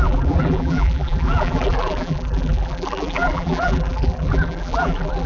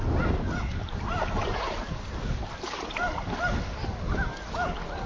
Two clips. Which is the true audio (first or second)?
second